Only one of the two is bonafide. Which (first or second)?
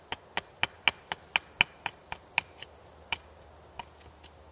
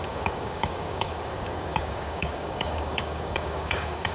first